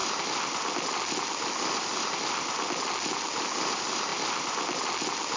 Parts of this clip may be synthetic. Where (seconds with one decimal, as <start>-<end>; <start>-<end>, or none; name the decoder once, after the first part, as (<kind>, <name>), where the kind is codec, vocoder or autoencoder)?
none